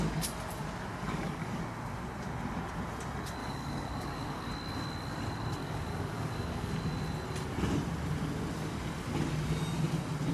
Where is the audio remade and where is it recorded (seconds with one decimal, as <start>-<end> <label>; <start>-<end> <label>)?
0.0-0.9 recorded; 0.9-1.6 remade; 1.6-3.4 recorded; 3.4-4.5 remade; 4.5-5.6 recorded; 5.6-6.7 remade; 6.7-10.3 recorded